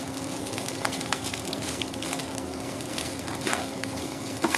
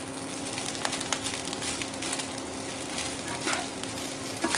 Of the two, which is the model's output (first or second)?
first